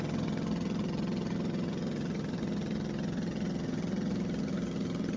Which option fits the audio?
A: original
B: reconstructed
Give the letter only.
B